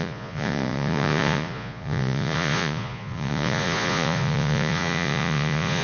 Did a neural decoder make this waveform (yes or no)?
yes